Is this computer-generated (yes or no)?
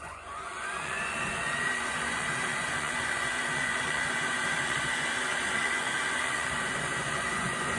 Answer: yes